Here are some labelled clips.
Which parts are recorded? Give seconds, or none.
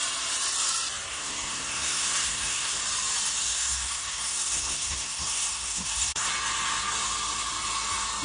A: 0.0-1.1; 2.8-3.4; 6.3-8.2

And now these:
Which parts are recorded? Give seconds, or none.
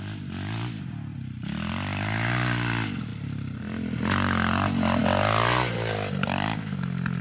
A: 0.0-7.2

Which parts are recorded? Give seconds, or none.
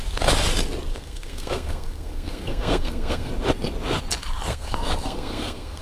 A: 0.0-0.9; 3.3-4.5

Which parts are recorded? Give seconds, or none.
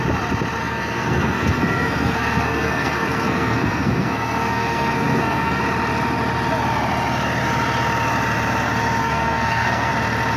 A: 0.0-0.6; 5.6-9.0; 9.9-10.4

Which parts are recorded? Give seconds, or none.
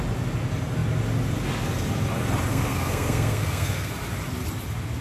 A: 0.0-2.5; 3.9-5.0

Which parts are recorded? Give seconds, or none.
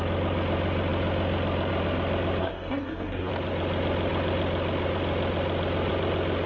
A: 0.0-2.4; 3.3-6.5